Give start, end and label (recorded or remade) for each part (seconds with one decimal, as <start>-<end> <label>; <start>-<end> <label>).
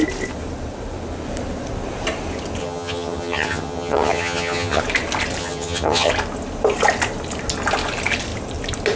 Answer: 0.0-2.6 recorded; 2.6-4.8 remade; 4.8-5.4 recorded; 5.4-6.1 remade; 6.1-9.0 recorded